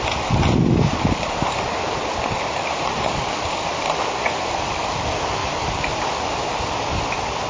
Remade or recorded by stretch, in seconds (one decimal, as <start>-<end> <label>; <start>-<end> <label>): 0.0-5.4 recorded; 5.4-6.1 remade; 6.1-7.5 recorded